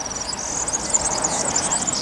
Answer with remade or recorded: recorded